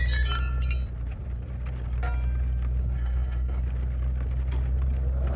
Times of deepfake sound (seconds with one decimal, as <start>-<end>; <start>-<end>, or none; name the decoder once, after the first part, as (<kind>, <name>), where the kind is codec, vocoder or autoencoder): 2.8-3.6 (codec, SNAC)